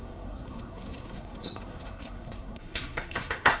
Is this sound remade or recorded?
remade